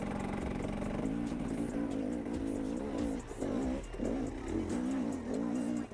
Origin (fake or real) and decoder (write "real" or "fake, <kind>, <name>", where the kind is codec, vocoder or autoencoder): real